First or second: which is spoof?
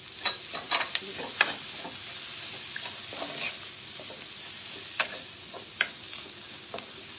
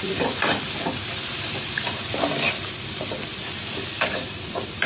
second